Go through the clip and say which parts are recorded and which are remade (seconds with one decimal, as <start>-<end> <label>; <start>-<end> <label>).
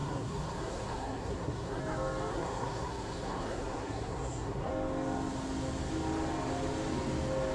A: 0.0-1.8 remade; 1.8-2.3 recorded; 2.3-4.7 remade; 4.7-7.5 recorded